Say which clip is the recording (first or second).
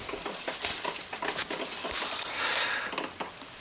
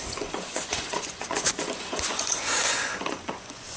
first